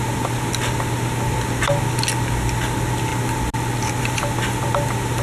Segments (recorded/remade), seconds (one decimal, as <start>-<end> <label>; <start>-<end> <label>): 0.0-5.2 recorded